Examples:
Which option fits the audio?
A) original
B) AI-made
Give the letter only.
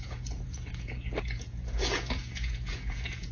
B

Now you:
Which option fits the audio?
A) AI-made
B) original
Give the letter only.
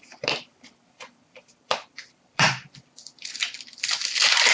A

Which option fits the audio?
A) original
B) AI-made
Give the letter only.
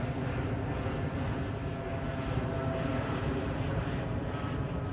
A